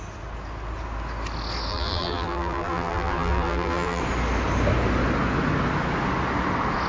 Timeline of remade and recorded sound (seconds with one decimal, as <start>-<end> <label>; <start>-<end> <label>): 0.0-1.7 recorded; 1.7-4.0 remade; 4.0-6.9 recorded